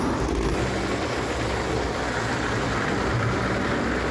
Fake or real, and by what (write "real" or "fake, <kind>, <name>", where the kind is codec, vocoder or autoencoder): real